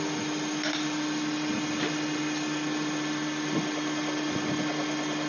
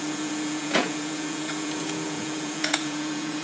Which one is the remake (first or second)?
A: second